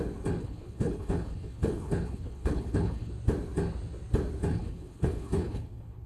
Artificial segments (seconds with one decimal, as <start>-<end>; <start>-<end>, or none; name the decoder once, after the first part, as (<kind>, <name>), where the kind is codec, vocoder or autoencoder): 0.4-3.1 (codec, HILCodec); 4.5-6.1